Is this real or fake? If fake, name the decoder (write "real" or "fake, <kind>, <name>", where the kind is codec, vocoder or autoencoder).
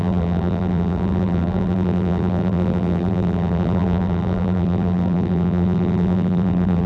fake, vocoder, BigVGAN v2